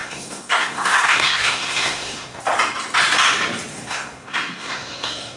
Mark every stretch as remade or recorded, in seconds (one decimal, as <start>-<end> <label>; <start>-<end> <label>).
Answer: 0.0-2.4 remade; 2.4-3.7 recorded; 3.7-5.4 remade